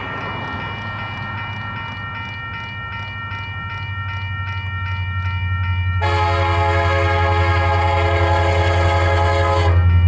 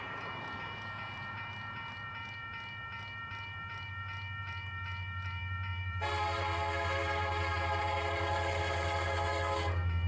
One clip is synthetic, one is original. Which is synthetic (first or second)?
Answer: second